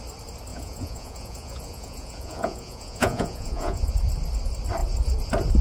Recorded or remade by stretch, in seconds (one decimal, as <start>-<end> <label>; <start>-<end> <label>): 0.0-0.5 recorded; 0.5-3.9 remade; 3.9-5.6 recorded